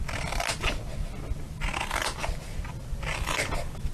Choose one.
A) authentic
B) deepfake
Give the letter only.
A